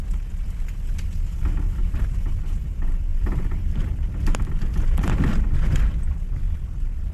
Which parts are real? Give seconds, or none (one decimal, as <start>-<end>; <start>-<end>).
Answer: 0.0-1.8; 2.6-3.1; 4.3-6.1